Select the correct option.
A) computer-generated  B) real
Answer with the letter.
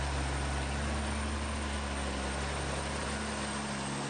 B